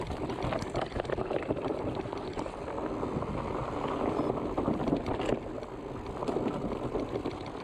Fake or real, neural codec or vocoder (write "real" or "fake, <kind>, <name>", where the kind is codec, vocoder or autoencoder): real